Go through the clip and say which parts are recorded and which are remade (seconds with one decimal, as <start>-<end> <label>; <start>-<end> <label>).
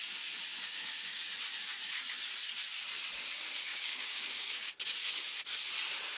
0.0-0.6 recorded; 0.6-1.2 remade; 1.2-3.7 recorded; 3.7-4.7 remade; 4.7-6.2 recorded